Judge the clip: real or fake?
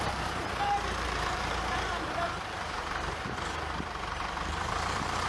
fake